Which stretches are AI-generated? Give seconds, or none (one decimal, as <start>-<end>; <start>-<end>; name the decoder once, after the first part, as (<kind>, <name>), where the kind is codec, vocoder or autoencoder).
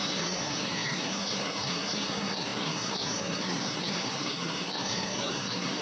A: 0.0-5.8 (codec, SNAC)